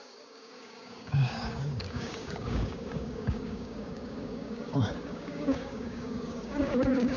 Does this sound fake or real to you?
fake